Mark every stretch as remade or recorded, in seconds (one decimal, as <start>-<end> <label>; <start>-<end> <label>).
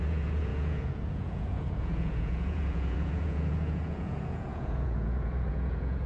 0.0-6.1 remade